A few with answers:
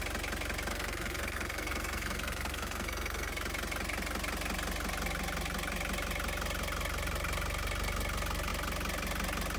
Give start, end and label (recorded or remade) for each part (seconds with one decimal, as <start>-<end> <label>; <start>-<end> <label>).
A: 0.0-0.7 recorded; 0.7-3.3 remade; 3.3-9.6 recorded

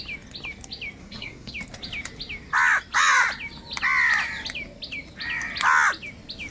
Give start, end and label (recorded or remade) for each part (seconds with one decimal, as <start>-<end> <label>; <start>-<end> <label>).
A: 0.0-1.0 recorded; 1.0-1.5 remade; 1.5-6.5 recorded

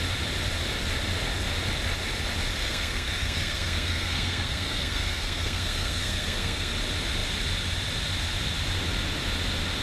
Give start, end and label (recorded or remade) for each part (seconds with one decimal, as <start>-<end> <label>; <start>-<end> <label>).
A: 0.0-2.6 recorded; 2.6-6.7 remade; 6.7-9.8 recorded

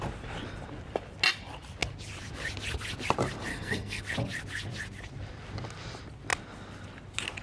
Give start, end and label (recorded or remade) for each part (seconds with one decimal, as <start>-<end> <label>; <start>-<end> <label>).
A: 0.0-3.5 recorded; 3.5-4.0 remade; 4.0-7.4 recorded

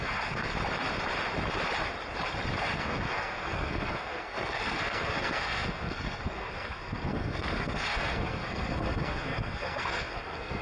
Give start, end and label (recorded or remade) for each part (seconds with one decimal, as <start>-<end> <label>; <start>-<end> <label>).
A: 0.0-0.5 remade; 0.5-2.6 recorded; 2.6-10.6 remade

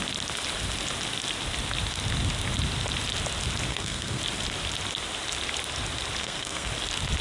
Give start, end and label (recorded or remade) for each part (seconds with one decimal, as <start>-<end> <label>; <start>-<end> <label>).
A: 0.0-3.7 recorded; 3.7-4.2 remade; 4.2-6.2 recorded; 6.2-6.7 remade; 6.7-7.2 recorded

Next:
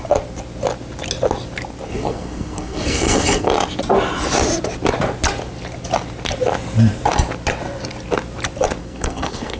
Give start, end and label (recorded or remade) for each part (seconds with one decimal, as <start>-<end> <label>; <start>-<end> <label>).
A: 0.0-1.9 recorded; 1.9-3.5 remade; 3.5-8.8 recorded; 8.8-9.6 remade